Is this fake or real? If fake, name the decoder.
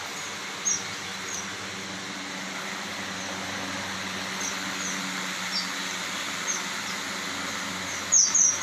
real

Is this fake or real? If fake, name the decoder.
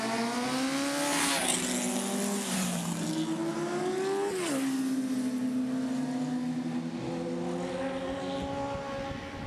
real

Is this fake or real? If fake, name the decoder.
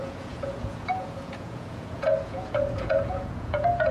fake, vocoder, Vocos